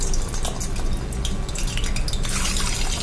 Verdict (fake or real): real